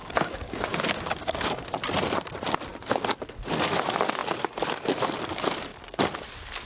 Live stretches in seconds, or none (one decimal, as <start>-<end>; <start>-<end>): 1.8-6.7